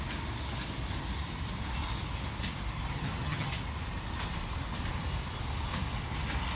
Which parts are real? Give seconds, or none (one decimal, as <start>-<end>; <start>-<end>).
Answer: 0.0-2.9; 3.5-6.6